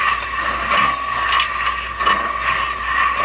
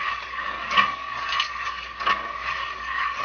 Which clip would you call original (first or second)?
first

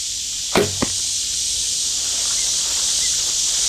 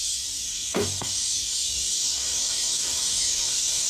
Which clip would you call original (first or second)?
first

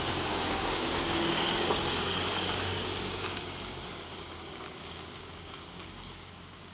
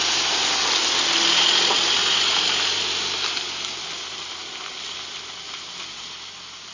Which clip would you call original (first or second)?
second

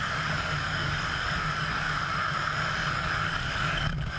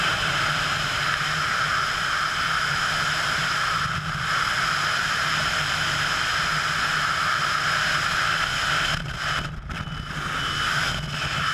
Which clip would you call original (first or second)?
second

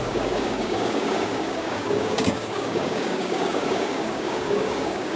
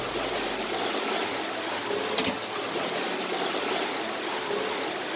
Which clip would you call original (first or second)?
second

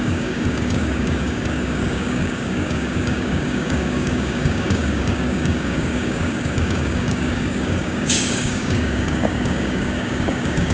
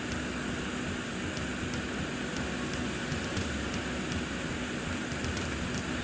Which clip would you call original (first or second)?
second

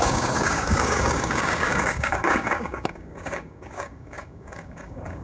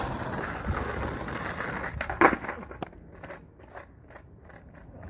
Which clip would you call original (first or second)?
second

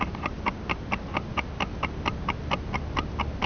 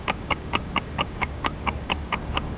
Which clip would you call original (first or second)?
first